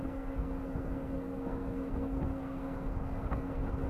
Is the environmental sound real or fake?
fake